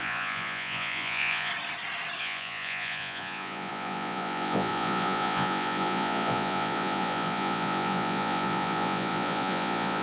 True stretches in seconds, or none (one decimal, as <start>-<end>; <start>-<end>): 1.5-2.2